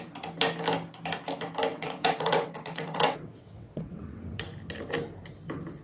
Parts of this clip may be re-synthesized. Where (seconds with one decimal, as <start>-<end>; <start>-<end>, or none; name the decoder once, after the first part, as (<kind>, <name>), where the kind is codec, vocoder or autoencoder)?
1.7-4.5 (vocoder, WaveNeXt)

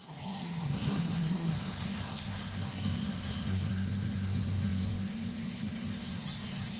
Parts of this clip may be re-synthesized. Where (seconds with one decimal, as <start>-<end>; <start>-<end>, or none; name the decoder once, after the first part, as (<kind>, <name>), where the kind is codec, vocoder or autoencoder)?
0.0-6.8 (codec, SNAC)

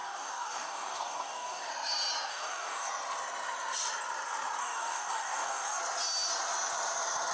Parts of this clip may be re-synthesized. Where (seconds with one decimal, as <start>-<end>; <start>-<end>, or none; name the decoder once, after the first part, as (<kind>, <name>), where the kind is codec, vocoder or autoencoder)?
0.0-1.7 (codec, DAC); 2.3-2.9; 4.6-5.8

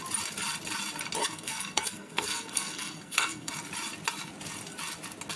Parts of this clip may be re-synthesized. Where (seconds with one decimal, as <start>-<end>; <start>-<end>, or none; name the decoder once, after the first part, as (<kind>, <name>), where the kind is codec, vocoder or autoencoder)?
1.2-3.5 (codec, SNAC)